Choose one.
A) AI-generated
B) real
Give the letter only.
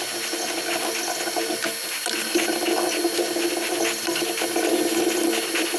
B